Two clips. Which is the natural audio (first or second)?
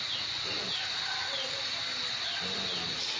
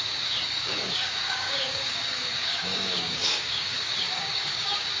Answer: first